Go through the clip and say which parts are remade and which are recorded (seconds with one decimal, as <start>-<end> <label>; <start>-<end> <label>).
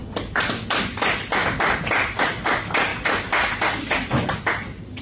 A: 0.0-0.9 recorded; 0.9-1.4 remade; 1.4-2.2 recorded; 2.2-5.0 remade